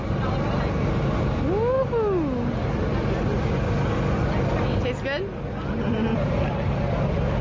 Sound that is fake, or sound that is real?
real